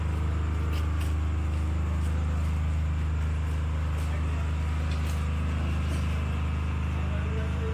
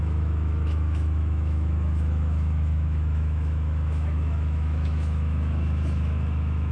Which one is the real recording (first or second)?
first